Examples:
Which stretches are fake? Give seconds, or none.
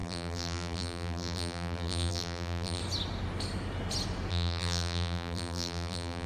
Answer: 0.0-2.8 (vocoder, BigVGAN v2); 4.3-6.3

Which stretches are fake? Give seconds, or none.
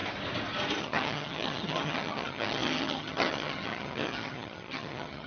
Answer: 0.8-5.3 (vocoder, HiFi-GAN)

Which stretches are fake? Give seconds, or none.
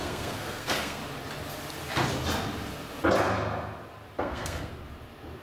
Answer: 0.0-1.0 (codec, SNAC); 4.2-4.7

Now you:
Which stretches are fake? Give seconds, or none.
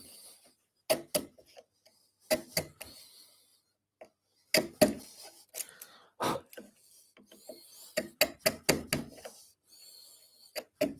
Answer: none